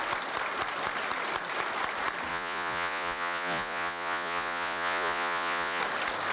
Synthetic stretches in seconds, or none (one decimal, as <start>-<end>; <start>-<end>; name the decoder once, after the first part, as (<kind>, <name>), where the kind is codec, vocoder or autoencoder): 2.3-5.8 (vocoder, Vocos)